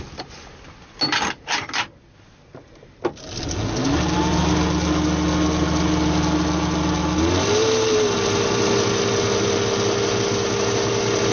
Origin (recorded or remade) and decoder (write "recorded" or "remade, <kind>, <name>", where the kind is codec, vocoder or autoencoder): recorded